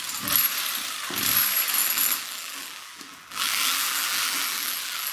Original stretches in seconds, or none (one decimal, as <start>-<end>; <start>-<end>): 0.0-1.8

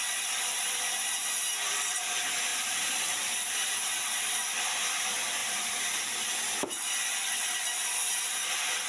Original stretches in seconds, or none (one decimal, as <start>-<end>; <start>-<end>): 0.0-2.5; 5.0-5.4; 6.5-8.9

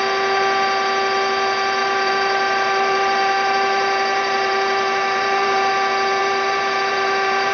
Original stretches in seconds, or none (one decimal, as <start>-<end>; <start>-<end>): 0.0-1.8; 5.7-6.2

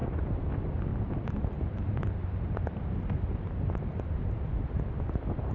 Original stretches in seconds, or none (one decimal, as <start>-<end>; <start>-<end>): 0.5-0.9; 4.2-5.5